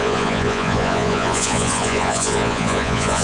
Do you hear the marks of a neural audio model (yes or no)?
yes